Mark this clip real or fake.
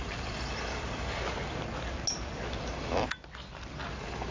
real